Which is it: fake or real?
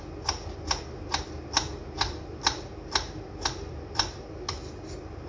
real